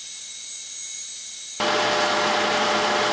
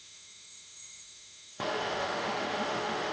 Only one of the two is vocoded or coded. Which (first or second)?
second